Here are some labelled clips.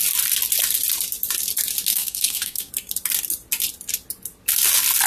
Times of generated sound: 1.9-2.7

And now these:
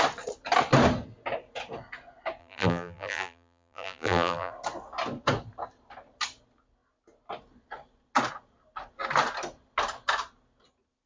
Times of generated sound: 2.4-4.5

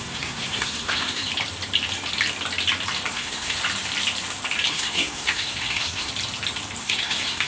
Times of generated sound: 0.0-1.3; 3.1-3.6; 4.7-6.1; 6.8-7.5

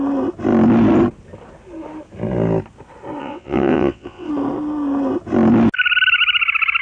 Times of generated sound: 3.2-4.3

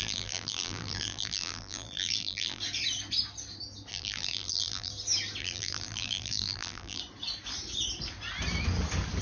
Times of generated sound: 0.0-2.6; 3.9-4.9; 5.4-7.0

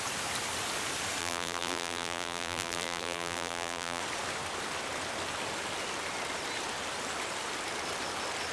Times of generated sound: 1.2-4.0

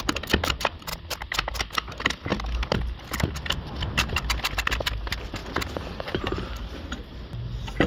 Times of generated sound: 0.9-1.5; 5.4-7.4